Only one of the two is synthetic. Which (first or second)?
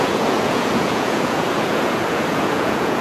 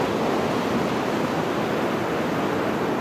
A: first